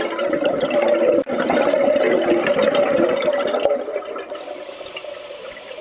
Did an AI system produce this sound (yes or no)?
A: no